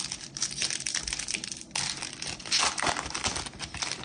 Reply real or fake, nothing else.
real